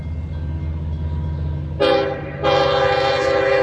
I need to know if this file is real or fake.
real